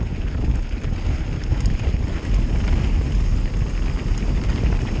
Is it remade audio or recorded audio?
recorded